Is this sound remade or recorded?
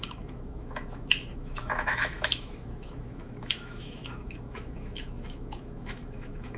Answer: remade